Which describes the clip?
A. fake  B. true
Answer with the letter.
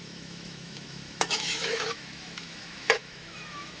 A